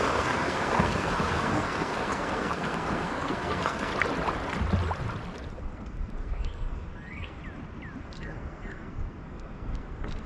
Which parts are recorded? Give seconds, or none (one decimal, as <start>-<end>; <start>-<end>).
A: 3.9-5.5; 7.4-8.0